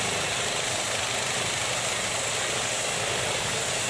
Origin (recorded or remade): recorded